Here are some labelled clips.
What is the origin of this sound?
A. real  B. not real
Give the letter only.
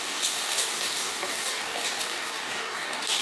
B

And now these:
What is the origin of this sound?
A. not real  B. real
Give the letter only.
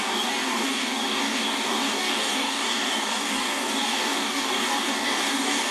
A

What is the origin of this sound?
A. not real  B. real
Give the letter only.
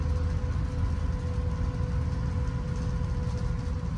B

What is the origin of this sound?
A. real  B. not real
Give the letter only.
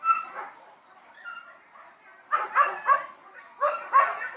A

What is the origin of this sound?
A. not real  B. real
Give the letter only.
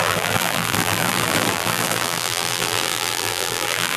A